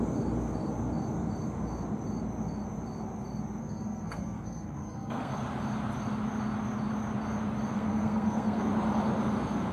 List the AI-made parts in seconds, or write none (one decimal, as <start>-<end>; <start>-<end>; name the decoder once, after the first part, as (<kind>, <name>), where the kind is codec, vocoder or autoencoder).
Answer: 3.6-5.3 (codec, SNAC); 7.7-8.6